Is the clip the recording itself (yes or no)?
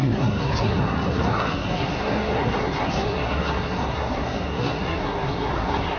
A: no